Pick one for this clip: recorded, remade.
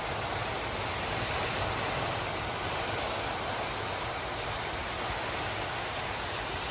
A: recorded